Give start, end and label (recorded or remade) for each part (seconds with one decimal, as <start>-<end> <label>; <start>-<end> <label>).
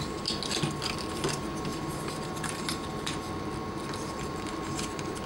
0.0-1.7 recorded; 1.7-4.6 remade; 4.6-5.3 recorded